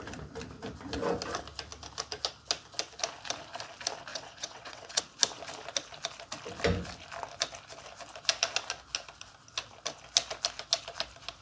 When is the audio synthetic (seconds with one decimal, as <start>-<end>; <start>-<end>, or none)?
4.1-5.0